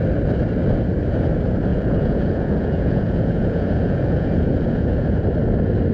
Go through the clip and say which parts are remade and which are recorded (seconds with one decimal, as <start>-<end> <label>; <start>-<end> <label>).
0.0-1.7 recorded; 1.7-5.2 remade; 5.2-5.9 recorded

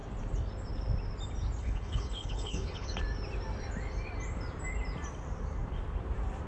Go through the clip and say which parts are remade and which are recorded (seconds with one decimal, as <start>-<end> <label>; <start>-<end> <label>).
0.0-1.6 recorded; 1.6-3.0 remade; 3.0-6.5 recorded

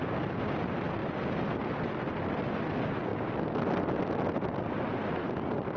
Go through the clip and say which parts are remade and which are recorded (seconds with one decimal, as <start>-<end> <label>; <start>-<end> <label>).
0.0-5.8 recorded

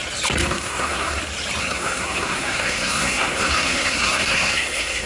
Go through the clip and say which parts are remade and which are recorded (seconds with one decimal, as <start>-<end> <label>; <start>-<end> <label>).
0.0-0.4 recorded; 0.4-1.2 remade; 1.2-1.6 recorded; 1.6-5.1 remade

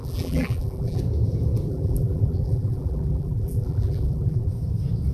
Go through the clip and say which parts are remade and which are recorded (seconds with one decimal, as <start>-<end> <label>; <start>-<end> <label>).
0.0-1.0 remade; 1.0-1.7 recorded; 1.7-4.5 remade; 4.5-5.1 recorded

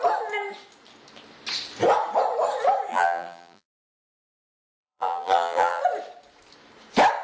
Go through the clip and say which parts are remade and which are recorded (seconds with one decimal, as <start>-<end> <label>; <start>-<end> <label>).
0.0-2.9 recorded; 2.9-5.8 remade; 5.8-7.2 recorded

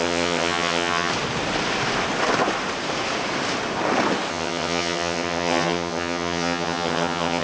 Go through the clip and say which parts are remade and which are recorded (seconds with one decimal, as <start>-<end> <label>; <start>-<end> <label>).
0.0-1.1 remade; 1.1-4.3 recorded; 4.3-7.4 remade